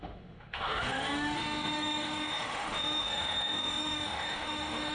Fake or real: fake